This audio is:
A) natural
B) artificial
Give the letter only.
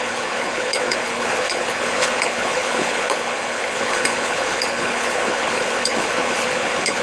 B